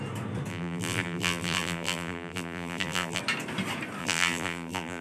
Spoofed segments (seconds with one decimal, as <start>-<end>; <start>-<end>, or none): 0.5-3.2; 4.0-5.0